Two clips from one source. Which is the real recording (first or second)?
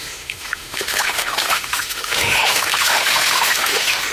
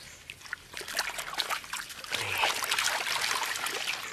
second